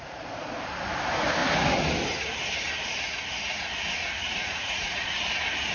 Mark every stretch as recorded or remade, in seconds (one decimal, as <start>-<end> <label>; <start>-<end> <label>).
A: 0.0-4.2 recorded; 4.2-5.2 remade; 5.2-5.7 recorded